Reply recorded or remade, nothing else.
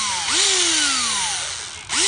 recorded